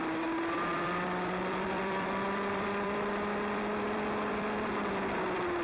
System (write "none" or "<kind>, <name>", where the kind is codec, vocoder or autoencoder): vocoder, BigVGAN v2